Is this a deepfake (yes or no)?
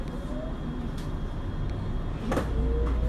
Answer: no